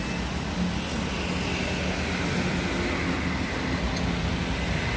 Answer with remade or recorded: recorded